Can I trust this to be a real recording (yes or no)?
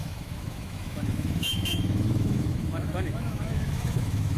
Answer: no